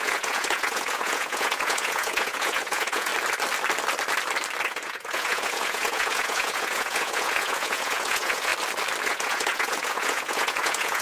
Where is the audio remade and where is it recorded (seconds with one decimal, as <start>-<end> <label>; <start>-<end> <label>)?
0.0-3.1 remade; 3.1-4.7 recorded; 4.7-8.5 remade; 8.5-9.1 recorded; 9.1-11.0 remade